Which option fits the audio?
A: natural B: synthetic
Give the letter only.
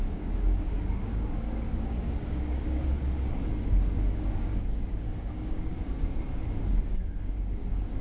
B